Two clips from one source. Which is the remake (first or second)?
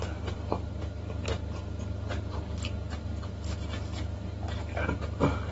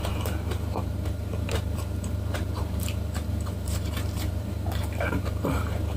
second